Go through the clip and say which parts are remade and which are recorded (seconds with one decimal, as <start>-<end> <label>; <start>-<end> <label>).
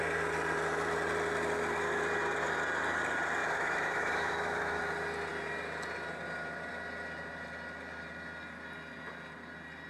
0.0-3.4 recorded; 3.4-4.8 remade; 4.8-9.9 recorded